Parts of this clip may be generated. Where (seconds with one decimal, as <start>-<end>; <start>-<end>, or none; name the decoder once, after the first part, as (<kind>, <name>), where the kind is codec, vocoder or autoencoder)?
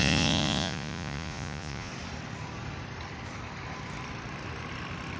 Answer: 0.0-1.9 (vocoder, Vocos)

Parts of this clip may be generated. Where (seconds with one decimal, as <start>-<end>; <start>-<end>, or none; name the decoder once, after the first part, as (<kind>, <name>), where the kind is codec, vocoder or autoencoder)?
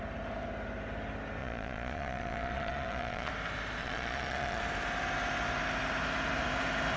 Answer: 1.4-3.3 (vocoder, Vocos); 3.8-4.6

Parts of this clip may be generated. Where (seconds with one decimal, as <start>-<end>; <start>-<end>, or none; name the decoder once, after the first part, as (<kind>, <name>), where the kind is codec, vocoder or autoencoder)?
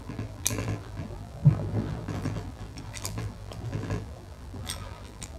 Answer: 0.0-5.4 (vocoder, BigVGAN v2)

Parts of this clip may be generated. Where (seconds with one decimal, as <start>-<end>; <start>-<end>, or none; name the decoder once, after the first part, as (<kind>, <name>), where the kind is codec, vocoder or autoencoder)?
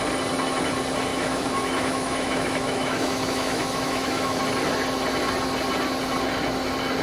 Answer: 1.1-4.4 (autoencoder, DAC-VAE)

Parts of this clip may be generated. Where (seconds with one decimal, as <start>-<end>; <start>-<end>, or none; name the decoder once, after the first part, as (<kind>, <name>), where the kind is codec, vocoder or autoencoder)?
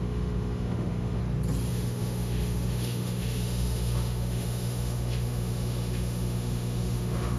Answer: 0.0-1.2 (autoencoder, DAC-VAE); 1.7-7.4